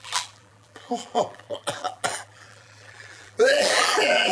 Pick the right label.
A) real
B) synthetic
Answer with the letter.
B